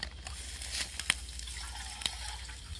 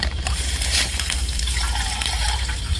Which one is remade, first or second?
second